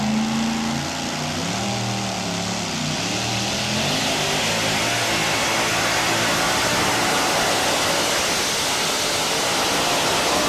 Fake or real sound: real